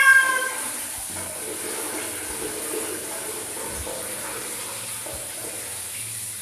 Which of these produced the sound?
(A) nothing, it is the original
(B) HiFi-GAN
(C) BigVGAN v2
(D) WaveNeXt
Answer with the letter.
A